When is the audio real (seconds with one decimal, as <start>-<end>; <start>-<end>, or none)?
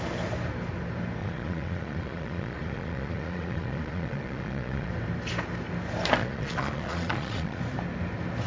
0.0-1.2; 4.9-6.2; 7.6-8.5